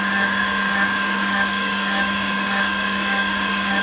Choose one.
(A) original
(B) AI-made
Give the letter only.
B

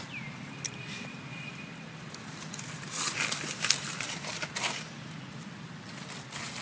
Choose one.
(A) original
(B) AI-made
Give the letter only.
A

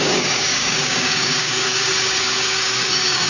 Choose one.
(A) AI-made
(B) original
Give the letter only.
A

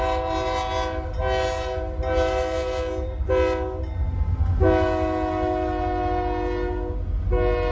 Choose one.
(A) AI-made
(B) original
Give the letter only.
B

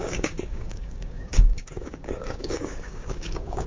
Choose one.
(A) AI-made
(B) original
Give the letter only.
A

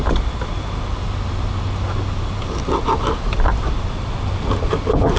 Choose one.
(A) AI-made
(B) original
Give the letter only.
B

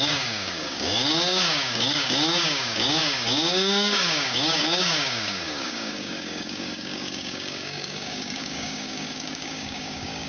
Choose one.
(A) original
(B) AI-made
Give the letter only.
B